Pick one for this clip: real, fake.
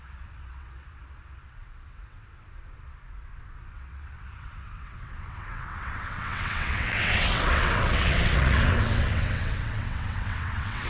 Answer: fake